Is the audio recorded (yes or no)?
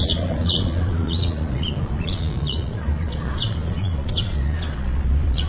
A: no